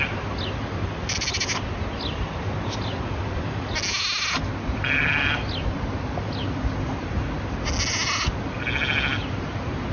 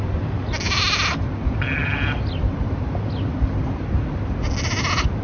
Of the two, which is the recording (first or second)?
first